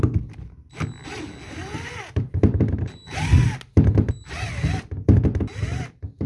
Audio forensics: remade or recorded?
recorded